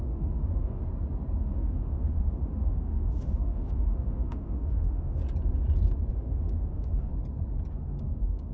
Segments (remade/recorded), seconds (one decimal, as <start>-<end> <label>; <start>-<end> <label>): 0.0-0.8 remade; 0.8-1.4 recorded; 1.4-5.2 remade; 5.2-6.1 recorded; 6.1-7.1 remade; 7.1-7.7 recorded; 7.7-8.5 remade